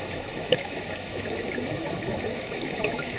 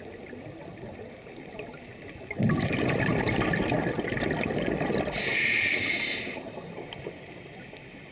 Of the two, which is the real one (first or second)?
second